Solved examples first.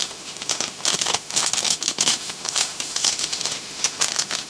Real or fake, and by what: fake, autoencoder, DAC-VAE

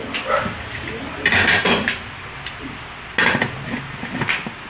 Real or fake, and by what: real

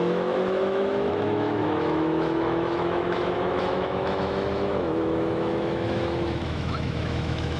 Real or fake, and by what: fake, autoencoder, DAC-VAE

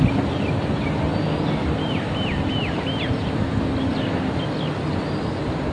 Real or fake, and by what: real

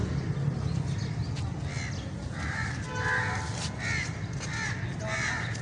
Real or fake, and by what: real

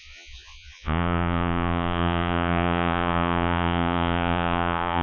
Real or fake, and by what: fake, vocoder, Vocos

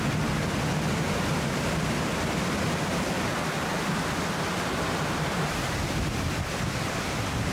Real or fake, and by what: real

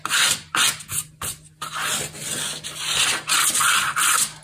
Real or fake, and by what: real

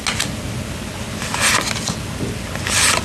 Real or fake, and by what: real